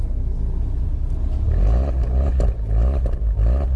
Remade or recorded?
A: recorded